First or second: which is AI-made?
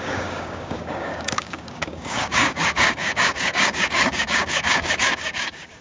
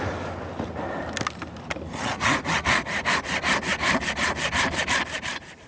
first